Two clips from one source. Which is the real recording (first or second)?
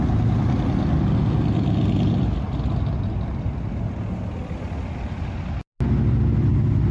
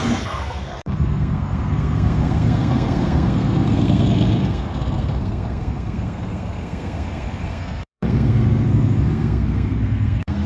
first